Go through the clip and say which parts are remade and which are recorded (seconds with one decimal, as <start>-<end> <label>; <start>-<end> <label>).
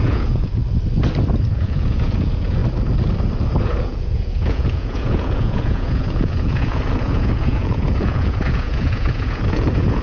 0.0-0.6 remade; 0.6-1.5 recorded; 1.5-2.6 remade; 2.6-3.6 recorded; 3.6-10.0 remade